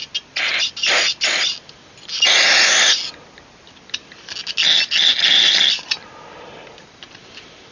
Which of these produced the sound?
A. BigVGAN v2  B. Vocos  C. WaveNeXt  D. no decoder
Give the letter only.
D